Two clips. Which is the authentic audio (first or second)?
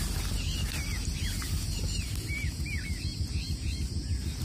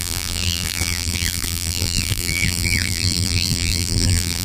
first